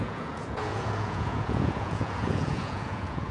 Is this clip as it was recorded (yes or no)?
no